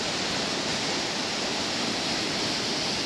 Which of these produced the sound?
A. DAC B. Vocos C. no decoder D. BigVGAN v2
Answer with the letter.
C